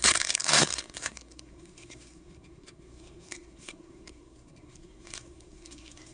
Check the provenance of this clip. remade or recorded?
remade